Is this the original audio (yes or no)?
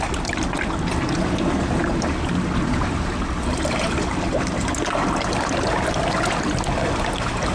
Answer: yes